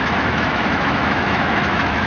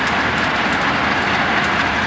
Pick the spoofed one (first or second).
first